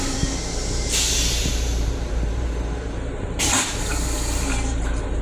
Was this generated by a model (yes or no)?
yes